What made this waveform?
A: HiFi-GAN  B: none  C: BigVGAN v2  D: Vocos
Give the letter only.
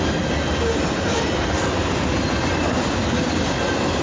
B